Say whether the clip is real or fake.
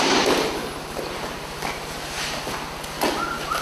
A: real